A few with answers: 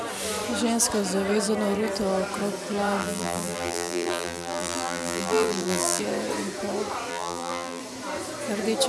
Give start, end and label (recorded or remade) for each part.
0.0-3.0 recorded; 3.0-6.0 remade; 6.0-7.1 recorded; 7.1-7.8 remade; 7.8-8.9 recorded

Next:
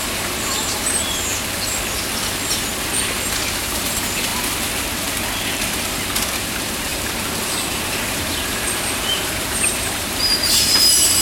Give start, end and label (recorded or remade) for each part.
0.0-1.3 remade; 1.3-3.6 recorded; 3.6-4.3 remade; 4.3-6.4 recorded; 6.4-11.2 remade

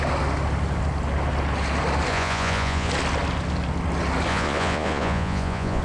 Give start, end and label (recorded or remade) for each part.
0.0-2.1 recorded; 2.1-2.9 remade; 2.9-4.3 recorded; 4.3-5.8 remade

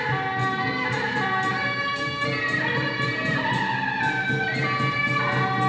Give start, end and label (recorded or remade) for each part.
0.0-0.4 recorded; 0.4-3.6 remade; 3.6-5.7 recorded